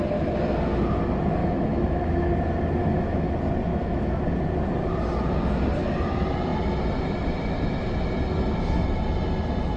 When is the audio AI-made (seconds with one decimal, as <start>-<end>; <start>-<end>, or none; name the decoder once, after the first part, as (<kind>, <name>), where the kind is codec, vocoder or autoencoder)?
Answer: 1.4-2.1 (autoencoder, DAC-VAE); 2.8-3.3; 3.7-4.2